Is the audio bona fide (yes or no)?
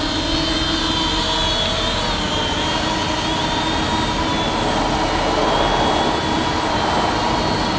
yes